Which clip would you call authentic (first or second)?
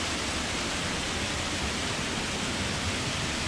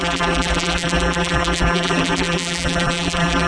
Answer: first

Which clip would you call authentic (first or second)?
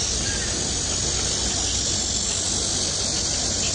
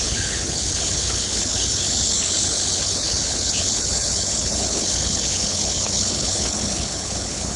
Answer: first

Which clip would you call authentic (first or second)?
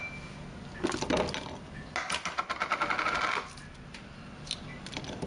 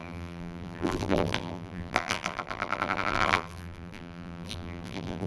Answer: first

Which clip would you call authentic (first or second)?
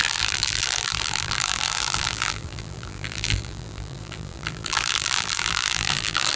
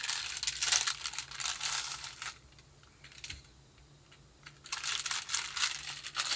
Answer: second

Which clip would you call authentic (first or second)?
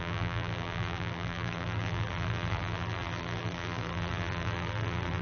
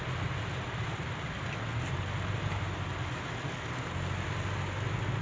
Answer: second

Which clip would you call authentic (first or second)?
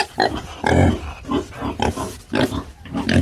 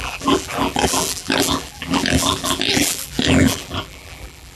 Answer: first